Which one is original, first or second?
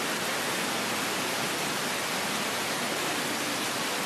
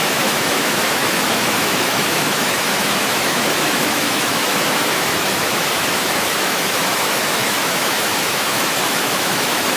first